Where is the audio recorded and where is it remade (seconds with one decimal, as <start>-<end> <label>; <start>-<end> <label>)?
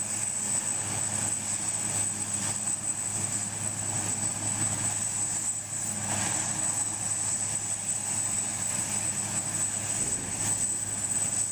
0.0-8.5 recorded; 8.5-9.0 remade; 9.0-11.5 recorded